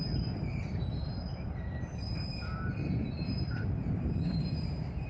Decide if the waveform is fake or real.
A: fake